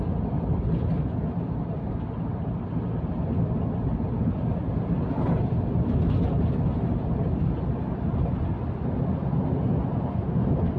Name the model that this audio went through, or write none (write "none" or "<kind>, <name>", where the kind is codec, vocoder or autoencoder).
none